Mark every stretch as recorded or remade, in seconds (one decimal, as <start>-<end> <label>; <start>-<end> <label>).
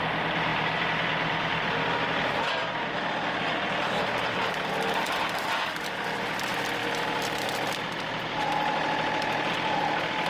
0.0-6.8 remade; 6.8-9.5 recorded; 9.5-10.3 remade